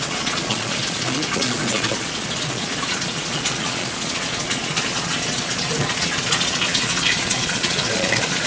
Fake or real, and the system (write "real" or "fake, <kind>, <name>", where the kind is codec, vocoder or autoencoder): fake, vocoder, Vocos